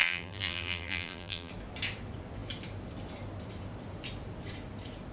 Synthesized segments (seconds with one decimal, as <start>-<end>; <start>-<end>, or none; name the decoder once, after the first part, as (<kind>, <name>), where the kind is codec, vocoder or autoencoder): 0.0-1.5 (vocoder, BigVGAN v2)